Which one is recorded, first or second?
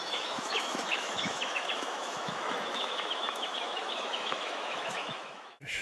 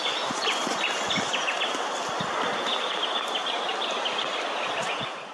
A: second